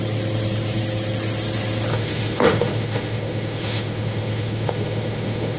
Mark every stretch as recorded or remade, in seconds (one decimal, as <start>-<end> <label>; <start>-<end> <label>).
0.0-1.9 recorded; 1.9-5.6 remade